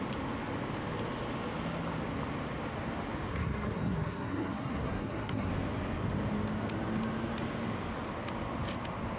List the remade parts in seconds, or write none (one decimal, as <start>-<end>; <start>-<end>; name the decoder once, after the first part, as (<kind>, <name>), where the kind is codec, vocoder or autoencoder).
3.3-5.5 (codec, SNAC)